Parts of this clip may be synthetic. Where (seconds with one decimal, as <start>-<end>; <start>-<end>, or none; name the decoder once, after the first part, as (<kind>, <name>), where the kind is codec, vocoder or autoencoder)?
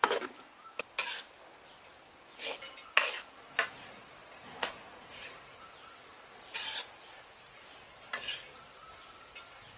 4.2-5.6 (vocoder, Vocos)